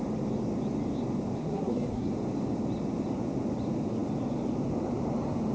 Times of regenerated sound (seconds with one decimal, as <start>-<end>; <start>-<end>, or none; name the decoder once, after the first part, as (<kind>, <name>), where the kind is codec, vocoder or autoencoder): 1.4-2.1 (codec, SNAC)